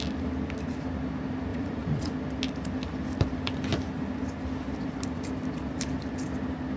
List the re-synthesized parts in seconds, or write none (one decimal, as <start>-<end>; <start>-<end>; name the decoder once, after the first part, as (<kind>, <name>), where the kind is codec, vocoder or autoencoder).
1.5-2.1 (vocoder, Vocos)